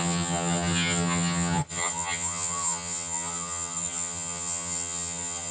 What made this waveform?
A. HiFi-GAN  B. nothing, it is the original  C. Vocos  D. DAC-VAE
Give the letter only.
A